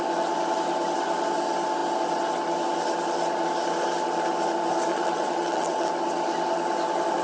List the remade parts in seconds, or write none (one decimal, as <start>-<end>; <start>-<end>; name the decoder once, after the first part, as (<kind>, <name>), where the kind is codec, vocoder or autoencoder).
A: 4.9-5.9 (vocoder, WaveNeXt)